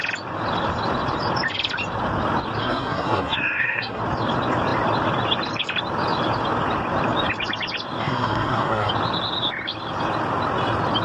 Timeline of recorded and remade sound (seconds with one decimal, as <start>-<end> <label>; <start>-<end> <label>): 0.0-2.6 recorded; 2.6-4.0 remade; 4.0-8.0 recorded; 8.0-8.9 remade; 8.9-11.0 recorded